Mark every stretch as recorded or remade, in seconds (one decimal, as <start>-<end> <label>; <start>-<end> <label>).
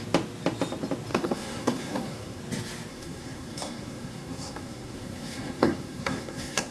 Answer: 0.0-1.1 recorded; 1.1-2.4 remade; 2.4-2.9 recorded; 2.9-6.7 remade